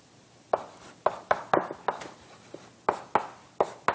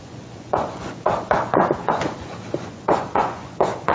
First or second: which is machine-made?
second